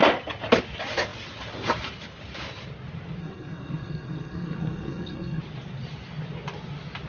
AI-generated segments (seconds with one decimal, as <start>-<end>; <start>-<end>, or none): 3.2-5.4